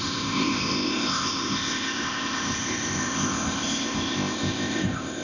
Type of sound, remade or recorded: remade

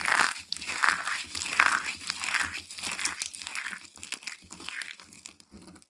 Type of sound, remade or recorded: recorded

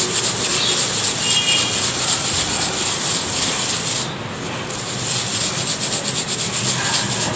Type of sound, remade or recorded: recorded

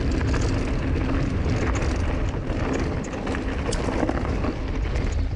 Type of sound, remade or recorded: recorded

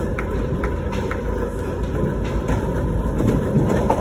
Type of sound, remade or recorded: recorded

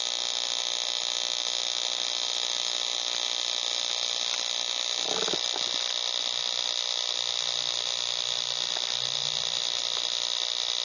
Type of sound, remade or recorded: recorded